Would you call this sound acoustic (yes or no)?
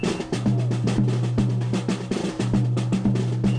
yes